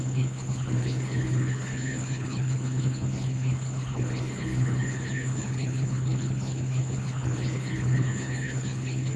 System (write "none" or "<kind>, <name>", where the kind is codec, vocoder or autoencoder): codec, HILCodec